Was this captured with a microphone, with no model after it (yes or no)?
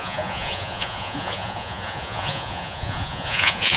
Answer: no